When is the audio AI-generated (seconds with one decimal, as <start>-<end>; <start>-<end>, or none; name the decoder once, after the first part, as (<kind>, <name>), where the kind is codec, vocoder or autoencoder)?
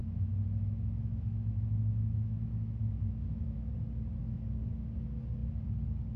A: 0.0-3.7 (autoencoder, DAC-VAE); 4.2-4.7